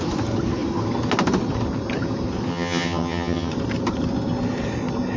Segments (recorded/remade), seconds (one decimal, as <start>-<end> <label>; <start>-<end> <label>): 0.0-2.5 recorded; 2.5-3.5 remade; 3.5-5.2 recorded